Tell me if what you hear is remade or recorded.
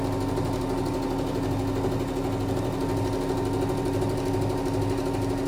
recorded